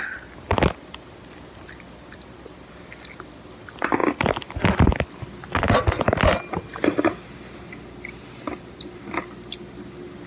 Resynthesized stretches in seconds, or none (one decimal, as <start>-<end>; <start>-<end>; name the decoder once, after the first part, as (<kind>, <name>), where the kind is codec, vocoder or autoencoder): none